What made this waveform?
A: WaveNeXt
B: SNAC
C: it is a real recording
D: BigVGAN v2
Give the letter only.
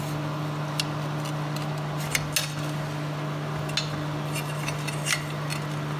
C